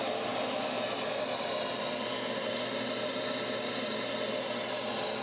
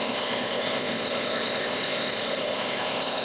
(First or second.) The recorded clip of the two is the first